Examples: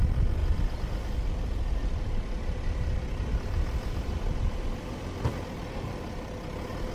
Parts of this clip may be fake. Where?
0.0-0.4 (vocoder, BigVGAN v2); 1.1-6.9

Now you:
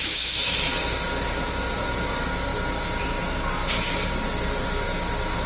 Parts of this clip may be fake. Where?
0.0-0.7 (autoencoder, DAC-VAE)

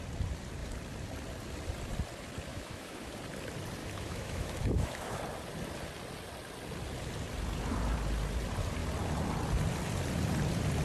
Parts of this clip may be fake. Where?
2.5-3.2 (autoencoder, DAC-VAE); 3.8-5.2